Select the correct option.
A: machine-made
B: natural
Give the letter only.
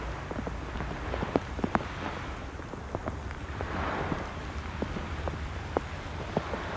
B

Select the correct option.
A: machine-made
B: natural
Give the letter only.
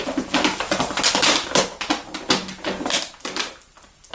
B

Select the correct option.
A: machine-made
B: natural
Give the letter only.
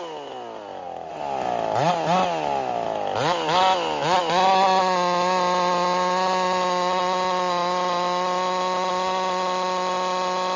B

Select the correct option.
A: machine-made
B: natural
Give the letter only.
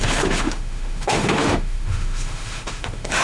A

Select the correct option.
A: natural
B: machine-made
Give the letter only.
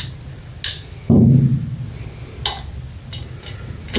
A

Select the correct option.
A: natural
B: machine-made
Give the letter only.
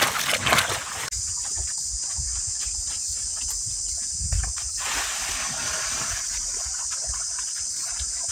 A